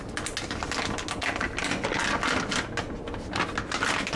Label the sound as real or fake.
real